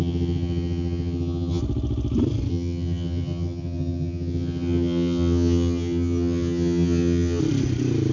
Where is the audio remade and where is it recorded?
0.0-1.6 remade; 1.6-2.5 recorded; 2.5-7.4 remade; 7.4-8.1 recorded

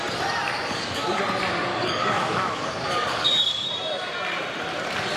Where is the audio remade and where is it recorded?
0.0-0.6 recorded; 0.6-1.2 remade; 1.2-1.7 recorded; 1.7-3.7 remade; 3.7-5.2 recorded

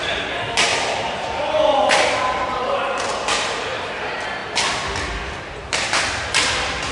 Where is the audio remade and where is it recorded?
0.0-4.4 remade; 4.4-5.5 recorded; 5.5-6.9 remade

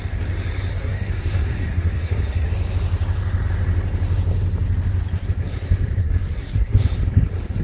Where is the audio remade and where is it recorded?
0.0-0.7 recorded; 0.7-2.5 remade; 2.5-6.0 recorded; 6.0-6.8 remade; 6.8-7.6 recorded

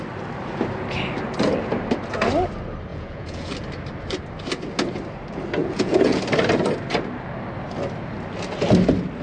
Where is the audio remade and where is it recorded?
0.0-2.9 recorded; 2.9-3.5 remade; 3.5-5.6 recorded; 5.6-6.2 remade; 6.2-9.2 recorded

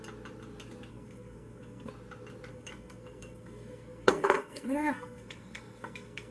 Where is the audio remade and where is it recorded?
0.0-0.9 recorded; 0.9-1.9 remade; 1.9-2.5 recorded; 2.5-6.3 remade

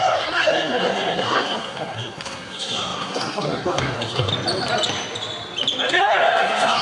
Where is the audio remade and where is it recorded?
0.0-4.3 remade; 4.3-5.9 recorded; 5.9-6.8 remade